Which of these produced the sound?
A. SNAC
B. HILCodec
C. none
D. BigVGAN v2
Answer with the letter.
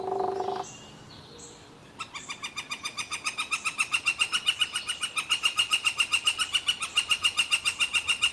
C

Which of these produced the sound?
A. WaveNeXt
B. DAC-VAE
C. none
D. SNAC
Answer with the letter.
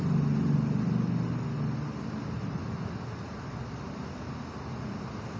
C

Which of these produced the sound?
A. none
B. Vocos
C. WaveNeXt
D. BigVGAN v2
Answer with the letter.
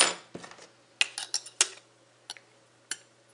A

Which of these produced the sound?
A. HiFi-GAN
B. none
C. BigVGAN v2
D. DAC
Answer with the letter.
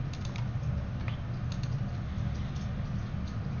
B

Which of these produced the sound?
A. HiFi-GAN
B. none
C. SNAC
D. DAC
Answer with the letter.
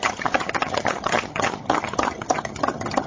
A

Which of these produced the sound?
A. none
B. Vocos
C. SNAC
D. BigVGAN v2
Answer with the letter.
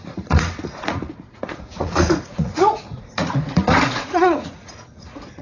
B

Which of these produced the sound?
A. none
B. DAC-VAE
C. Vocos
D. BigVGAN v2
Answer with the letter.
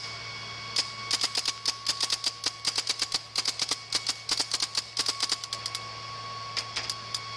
A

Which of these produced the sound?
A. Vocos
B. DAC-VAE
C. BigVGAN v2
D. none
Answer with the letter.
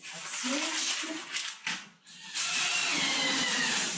D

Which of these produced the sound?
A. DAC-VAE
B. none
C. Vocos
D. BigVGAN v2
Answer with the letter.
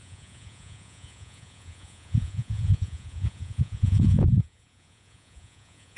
C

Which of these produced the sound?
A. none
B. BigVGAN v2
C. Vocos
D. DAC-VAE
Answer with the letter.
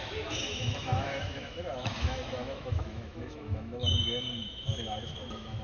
D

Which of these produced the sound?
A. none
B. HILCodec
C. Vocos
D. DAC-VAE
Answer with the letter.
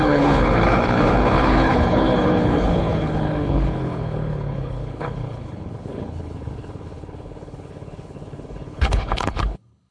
B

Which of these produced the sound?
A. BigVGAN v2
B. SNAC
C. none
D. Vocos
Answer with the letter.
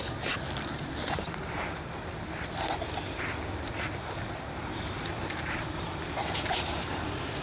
C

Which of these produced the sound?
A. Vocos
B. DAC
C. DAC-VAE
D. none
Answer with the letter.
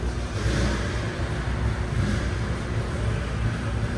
D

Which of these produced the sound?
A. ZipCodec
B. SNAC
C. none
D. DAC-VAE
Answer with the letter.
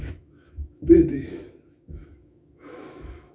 D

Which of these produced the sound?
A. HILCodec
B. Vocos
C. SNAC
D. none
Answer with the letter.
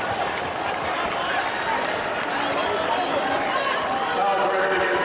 D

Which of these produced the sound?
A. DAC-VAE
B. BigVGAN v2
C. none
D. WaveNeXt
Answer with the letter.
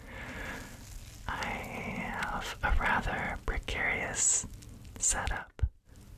C